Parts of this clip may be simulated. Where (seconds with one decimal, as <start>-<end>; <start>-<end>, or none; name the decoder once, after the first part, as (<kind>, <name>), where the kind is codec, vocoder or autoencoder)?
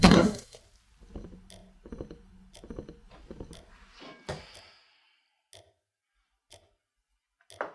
0.0-0.6 (codec, SNAC)